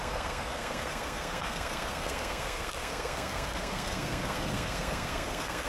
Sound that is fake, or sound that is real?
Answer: fake